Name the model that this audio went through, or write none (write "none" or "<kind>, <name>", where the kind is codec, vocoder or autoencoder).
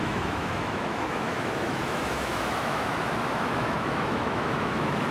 autoencoder, DAC-VAE